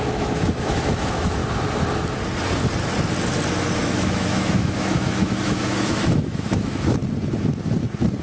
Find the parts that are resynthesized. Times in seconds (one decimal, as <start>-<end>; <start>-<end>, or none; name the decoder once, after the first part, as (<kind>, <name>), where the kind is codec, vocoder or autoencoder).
0.0-1.4 (autoencoder, DAC-VAE); 3.8-7.0